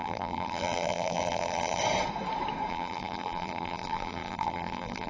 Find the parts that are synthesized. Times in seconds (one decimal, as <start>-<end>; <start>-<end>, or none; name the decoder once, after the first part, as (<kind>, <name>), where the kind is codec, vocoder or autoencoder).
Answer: 0.0-1.8 (vocoder, BigVGAN v2); 2.7-5.1